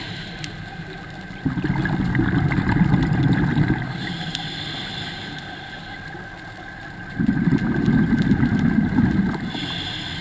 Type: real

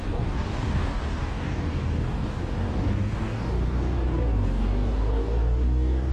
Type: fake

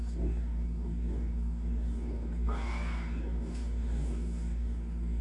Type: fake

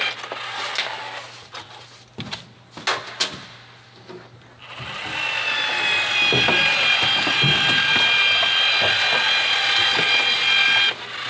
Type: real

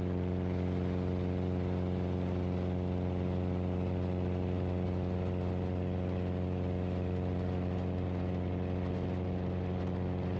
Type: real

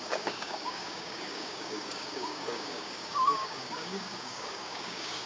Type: fake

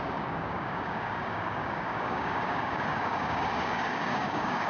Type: fake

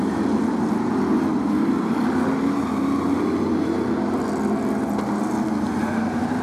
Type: real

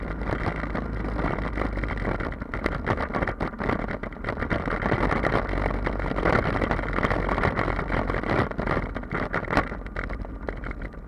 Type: real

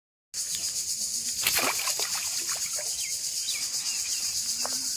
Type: real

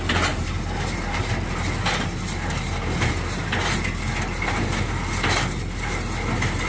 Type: real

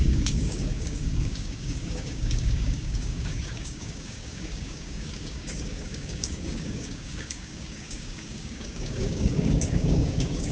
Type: fake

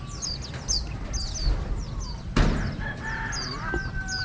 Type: real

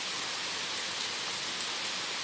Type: real